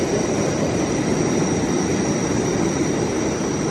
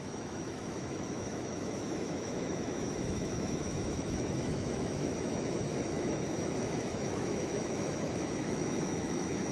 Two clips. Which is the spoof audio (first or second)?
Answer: second